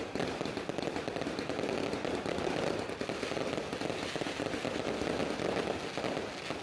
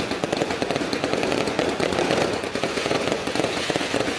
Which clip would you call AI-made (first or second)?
second